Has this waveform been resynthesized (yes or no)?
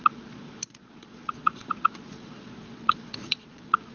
yes